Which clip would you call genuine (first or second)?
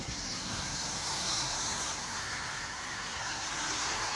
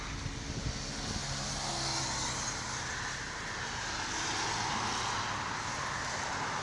second